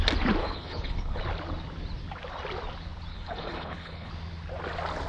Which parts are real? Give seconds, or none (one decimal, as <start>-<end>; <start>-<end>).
0.0-0.4; 1.2-3.1; 4.1-5.1